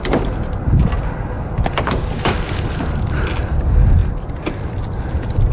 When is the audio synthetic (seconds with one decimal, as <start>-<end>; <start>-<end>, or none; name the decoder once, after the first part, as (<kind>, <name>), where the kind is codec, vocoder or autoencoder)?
none